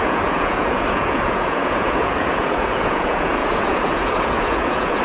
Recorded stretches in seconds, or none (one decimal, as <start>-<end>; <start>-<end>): none